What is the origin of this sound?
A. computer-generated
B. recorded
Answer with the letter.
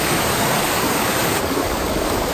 A